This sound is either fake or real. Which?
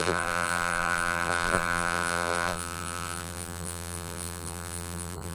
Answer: fake